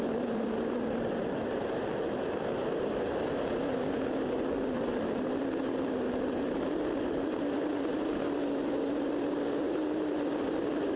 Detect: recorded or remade recorded